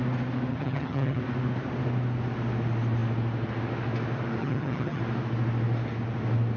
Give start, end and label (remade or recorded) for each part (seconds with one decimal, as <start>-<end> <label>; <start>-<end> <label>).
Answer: 0.0-0.5 recorded; 0.5-1.2 remade; 1.2-4.4 recorded; 4.4-5.0 remade; 5.0-6.6 recorded